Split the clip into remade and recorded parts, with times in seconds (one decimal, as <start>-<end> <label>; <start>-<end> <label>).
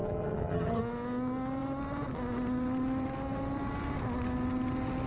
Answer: 0.0-0.8 remade; 0.8-5.1 recorded